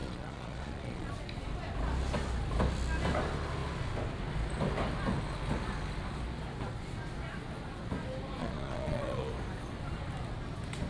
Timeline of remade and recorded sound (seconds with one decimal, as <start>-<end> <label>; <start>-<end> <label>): 0.0-1.1 remade; 1.1-8.4 recorded; 8.4-9.3 remade; 9.3-10.9 recorded